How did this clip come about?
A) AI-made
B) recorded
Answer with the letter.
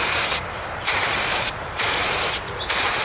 A